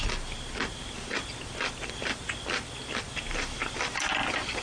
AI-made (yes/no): no